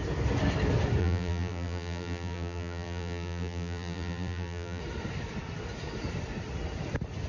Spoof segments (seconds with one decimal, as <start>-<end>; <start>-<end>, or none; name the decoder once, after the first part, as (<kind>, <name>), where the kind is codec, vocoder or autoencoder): 1.0-4.8 (vocoder, BigVGAN v2)